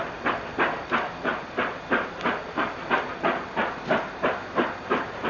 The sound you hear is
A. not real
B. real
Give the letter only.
A